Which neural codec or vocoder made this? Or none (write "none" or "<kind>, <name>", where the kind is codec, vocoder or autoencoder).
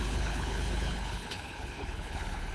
codec, HILCodec